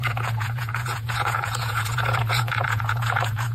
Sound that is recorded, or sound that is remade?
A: remade